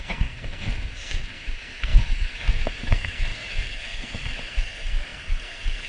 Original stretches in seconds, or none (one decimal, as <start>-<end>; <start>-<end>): none